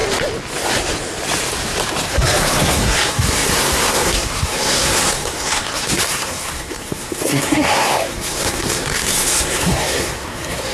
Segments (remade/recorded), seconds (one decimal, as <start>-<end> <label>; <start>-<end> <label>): 0.0-2.1 recorded; 2.1-10.7 remade